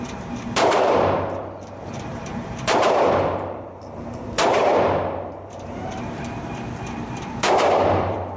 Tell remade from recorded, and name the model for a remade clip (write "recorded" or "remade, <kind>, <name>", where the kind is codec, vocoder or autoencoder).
remade, vocoder, BigVGAN v2